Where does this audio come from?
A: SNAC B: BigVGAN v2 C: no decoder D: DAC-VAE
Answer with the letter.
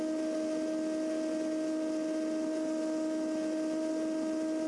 C